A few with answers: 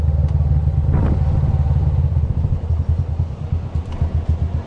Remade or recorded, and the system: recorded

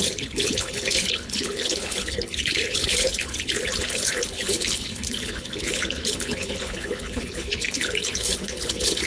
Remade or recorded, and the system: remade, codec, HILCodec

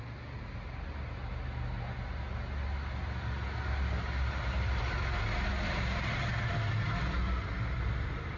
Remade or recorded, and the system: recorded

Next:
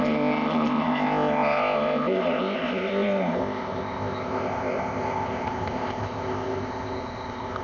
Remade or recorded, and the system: remade, codec, ZipCodec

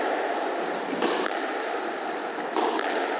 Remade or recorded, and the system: recorded